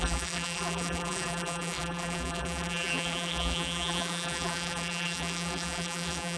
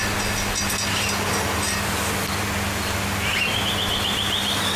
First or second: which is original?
second